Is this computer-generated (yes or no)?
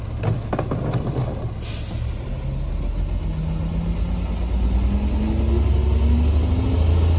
no